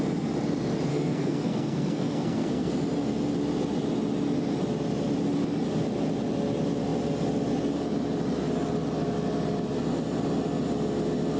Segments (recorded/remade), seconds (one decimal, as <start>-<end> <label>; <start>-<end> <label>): 0.0-0.9 recorded; 0.9-2.7 remade; 2.7-11.4 recorded